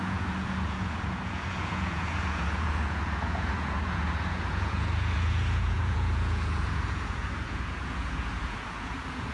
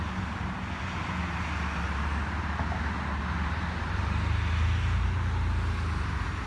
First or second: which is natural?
second